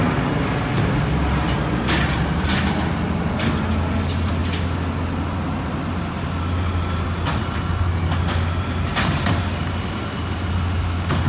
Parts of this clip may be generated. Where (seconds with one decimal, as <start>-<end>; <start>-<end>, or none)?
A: none